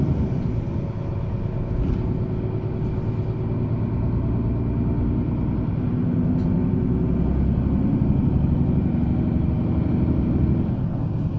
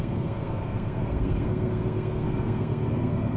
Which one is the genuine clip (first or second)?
first